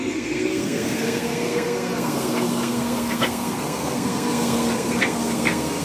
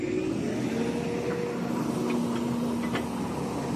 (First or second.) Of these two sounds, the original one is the second